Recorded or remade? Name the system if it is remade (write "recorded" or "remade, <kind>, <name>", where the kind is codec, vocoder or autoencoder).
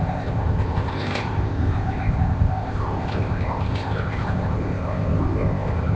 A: remade, codec, ZipCodec